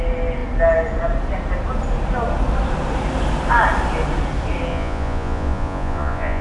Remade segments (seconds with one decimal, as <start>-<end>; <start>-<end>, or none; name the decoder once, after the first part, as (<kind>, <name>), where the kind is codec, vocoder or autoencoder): 4.7-6.4 (vocoder, Vocos)